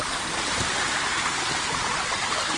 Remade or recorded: recorded